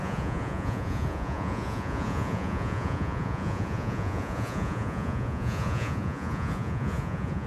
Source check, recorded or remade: remade